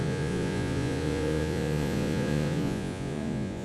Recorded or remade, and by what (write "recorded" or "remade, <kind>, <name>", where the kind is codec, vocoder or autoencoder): remade, vocoder, Vocos